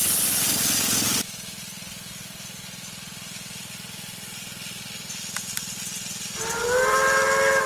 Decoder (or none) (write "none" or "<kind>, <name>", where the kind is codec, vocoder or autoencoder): none